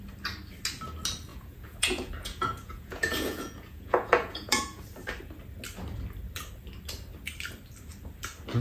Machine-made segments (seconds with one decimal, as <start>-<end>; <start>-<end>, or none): 1.3-4.8